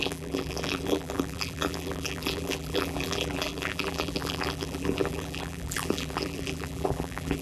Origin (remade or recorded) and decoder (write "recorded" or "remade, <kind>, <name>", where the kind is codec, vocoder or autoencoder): remade, vocoder, BigVGAN v2